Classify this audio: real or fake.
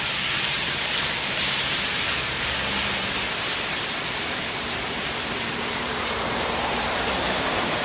fake